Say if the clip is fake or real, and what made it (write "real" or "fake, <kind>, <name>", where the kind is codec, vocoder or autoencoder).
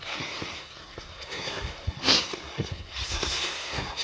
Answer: fake, codec, SNAC